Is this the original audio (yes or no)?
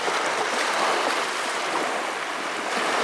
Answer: yes